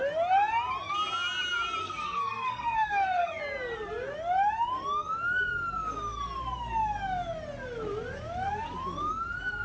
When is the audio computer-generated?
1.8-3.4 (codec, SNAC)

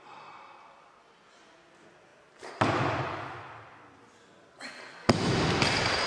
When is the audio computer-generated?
none

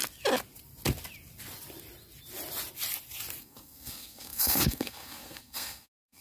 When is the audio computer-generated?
3.4-6.2 (codec, SNAC)

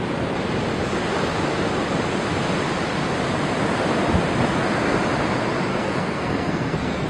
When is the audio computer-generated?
5.7-7.1 (codec, SNAC)

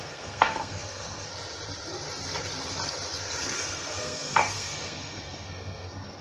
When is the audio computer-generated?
0.0-1.3 (codec, SNAC); 3.4-6.2

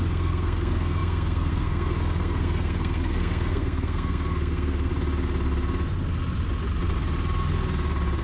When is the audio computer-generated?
0.0-4.9 (codec, SNAC)